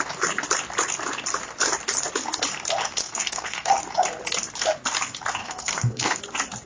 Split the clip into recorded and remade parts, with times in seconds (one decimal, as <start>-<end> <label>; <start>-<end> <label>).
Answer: 0.0-3.0 recorded; 3.0-3.8 remade; 3.8-5.4 recorded; 5.4-6.2 remade; 6.2-6.7 recorded